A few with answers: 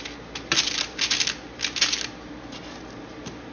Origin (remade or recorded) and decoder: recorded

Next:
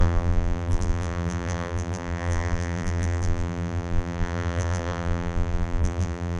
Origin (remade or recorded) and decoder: remade, vocoder, BigVGAN v2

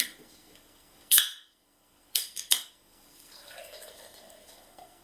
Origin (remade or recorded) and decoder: remade, codec, SNAC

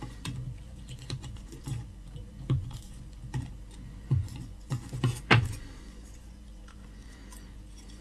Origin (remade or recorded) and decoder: remade, vocoder, Vocos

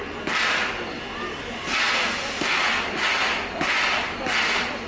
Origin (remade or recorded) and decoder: recorded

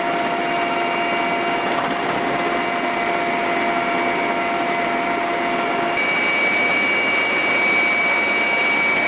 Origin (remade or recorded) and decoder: recorded